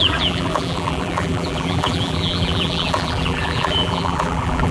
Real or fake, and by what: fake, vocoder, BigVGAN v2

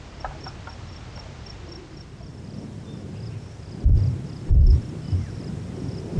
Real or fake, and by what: real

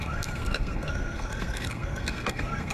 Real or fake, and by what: fake, codec, SNAC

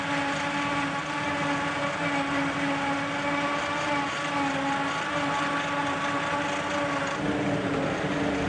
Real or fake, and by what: real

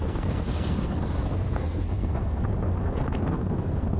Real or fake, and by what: fake, codec, SNAC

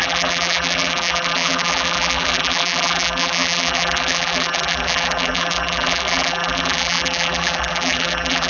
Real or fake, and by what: fake, vocoder, BigVGAN v2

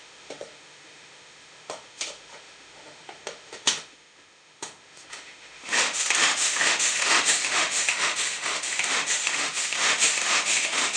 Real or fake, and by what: fake, autoencoder, DAC-VAE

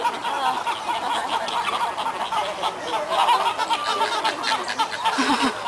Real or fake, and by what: real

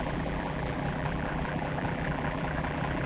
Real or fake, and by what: fake, vocoder, BigVGAN v2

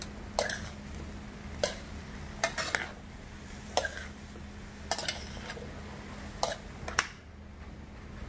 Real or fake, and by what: real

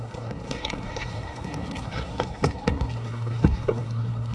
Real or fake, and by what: fake, codec, SNAC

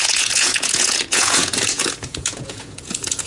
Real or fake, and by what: fake, vocoder, Vocos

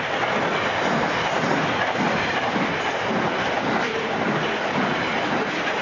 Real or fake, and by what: real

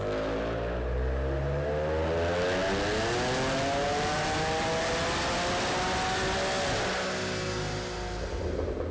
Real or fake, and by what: real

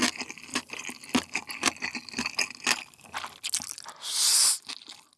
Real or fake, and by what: real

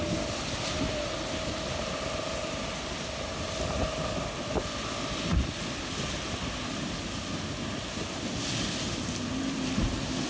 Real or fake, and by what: real